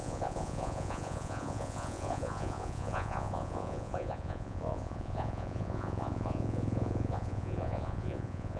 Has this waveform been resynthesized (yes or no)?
yes